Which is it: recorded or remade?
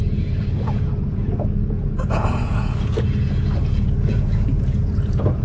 remade